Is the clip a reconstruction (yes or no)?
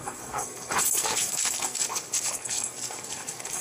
yes